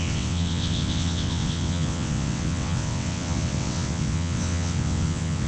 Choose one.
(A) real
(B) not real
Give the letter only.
B